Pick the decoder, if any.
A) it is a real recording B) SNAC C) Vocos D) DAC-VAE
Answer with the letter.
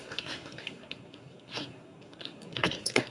B